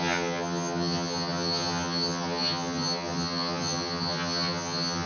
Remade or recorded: remade